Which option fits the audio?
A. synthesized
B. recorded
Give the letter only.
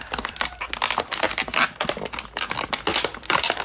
B